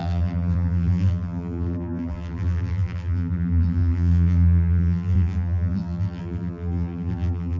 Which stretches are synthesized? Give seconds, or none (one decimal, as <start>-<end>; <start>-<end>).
0.0-7.6